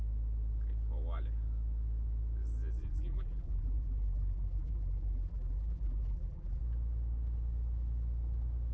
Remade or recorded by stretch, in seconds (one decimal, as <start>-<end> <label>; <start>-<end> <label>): 0.0-2.8 recorded; 2.8-6.6 remade; 6.6-8.7 recorded